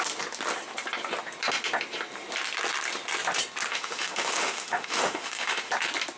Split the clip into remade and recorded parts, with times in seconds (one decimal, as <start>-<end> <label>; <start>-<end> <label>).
0.0-3.7 recorded; 3.7-5.7 remade; 5.7-6.2 recorded